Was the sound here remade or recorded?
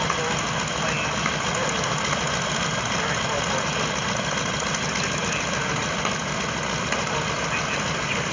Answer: recorded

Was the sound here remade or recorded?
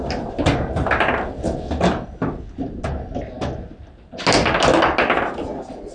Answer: recorded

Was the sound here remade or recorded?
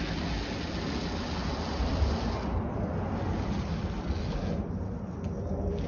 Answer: recorded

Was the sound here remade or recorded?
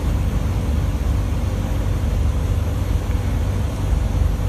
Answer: recorded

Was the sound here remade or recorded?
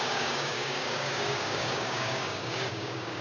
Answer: remade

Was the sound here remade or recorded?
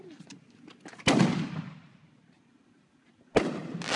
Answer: recorded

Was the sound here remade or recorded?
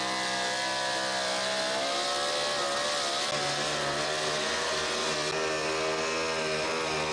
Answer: recorded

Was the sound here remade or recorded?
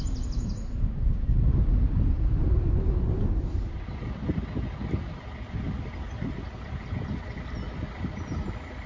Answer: recorded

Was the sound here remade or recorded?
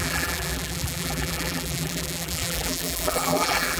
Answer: remade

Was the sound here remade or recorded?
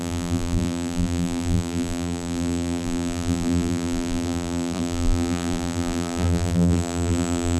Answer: remade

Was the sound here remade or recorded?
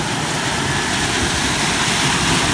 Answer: recorded